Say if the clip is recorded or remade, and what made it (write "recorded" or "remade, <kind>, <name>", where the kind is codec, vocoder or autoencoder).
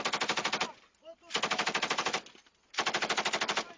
remade, vocoder, BigVGAN v2